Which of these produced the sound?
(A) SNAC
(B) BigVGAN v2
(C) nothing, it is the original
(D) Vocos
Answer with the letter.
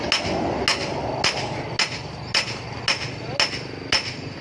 C